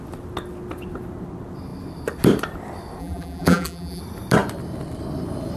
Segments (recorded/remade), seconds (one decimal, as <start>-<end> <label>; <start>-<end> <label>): 0.0-3.0 recorded; 3.0-4.0 remade; 4.0-5.6 recorded